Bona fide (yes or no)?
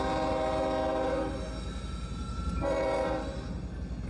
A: yes